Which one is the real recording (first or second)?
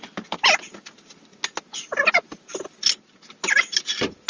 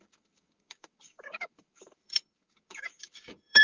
first